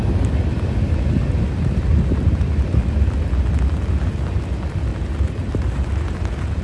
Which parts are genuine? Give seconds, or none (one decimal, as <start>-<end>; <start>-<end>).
0.0-4.9